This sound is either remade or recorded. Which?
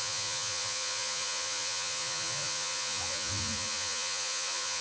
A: remade